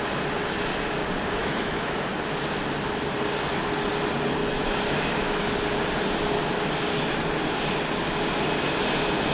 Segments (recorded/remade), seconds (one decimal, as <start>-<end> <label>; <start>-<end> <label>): 0.0-1.4 recorded; 1.4-2.0 remade; 2.0-4.4 recorded; 4.4-5.5 remade; 5.5-9.3 recorded